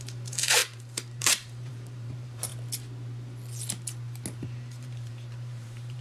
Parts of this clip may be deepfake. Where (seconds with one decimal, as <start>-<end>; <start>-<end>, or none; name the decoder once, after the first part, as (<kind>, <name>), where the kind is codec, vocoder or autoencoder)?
0.0-2.5 (vocoder, BigVGAN v2); 4.4-6.0